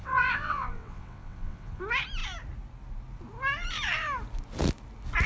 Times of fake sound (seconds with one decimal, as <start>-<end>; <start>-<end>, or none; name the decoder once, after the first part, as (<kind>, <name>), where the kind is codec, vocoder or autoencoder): 0.0-1.8 (vocoder, WaveNeXt)

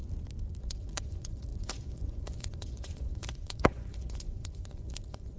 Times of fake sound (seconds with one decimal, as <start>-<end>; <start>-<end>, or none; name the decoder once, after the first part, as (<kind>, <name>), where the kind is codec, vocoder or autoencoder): 0.6-5.4 (vocoder, Vocos)

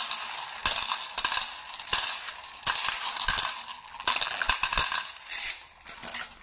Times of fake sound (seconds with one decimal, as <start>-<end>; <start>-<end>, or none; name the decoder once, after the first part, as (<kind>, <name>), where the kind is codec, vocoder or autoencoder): 3.7-4.5 (vocoder, BigVGAN v2)

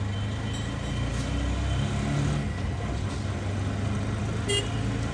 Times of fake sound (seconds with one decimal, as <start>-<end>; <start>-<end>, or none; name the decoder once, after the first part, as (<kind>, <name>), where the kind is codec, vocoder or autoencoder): none